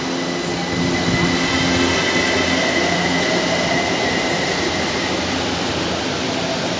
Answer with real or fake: real